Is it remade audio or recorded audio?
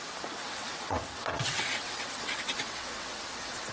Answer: remade